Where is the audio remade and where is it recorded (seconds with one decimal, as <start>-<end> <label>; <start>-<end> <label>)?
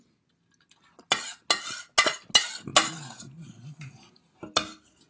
0.0-5.1 recorded